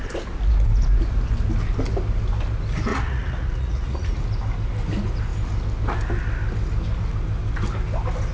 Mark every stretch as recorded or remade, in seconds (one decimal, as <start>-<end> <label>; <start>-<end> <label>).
0.0-2.9 recorded; 2.9-4.2 remade; 4.2-8.3 recorded